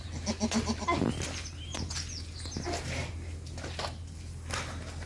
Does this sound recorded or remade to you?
recorded